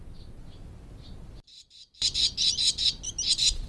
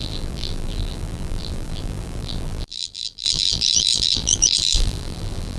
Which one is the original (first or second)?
first